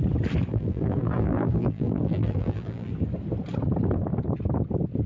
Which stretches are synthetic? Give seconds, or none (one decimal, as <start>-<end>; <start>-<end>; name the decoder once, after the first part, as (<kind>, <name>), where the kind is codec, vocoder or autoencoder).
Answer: 0.5-2.9 (vocoder, BigVGAN v2)